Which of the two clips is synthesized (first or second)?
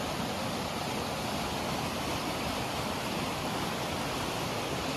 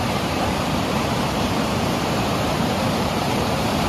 second